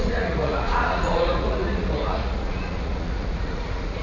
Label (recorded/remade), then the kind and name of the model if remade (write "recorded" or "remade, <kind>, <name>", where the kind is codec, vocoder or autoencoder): remade, vocoder, Vocos